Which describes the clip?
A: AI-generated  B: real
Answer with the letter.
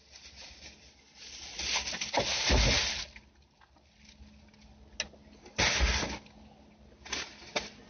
B